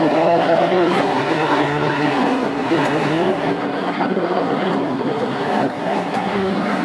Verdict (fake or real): fake